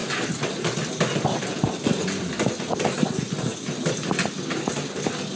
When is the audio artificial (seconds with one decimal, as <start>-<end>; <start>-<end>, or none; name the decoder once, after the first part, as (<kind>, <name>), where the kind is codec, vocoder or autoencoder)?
none